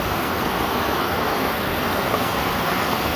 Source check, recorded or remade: remade